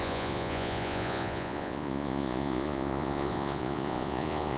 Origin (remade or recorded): remade